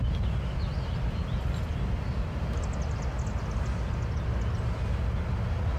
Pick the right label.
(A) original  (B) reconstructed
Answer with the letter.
A